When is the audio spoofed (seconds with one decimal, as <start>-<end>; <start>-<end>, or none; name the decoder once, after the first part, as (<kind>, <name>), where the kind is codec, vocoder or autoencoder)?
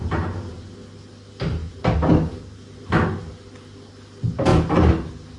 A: none